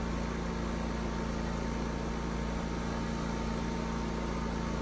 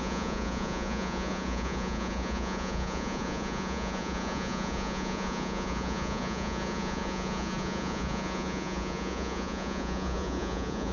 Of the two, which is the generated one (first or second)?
second